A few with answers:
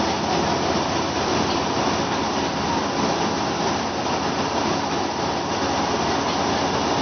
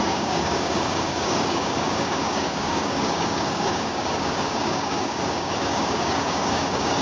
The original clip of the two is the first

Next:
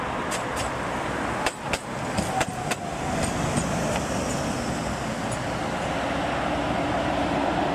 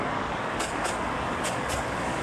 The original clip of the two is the first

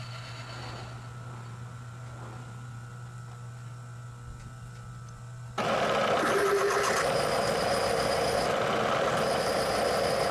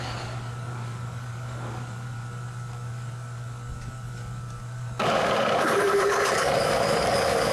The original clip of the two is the first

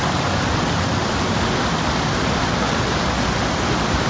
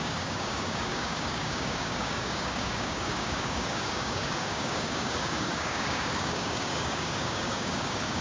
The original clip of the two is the first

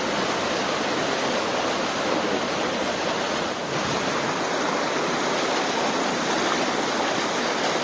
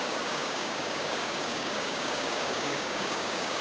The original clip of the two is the first